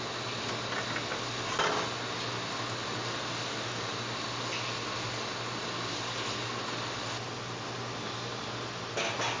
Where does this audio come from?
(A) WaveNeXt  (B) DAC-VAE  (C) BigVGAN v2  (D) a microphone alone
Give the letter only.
D